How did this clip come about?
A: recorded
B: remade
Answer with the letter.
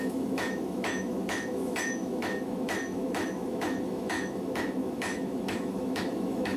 B